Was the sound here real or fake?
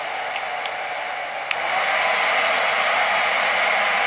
real